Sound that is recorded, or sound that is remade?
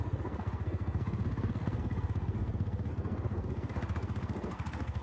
remade